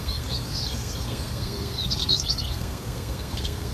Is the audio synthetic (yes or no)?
yes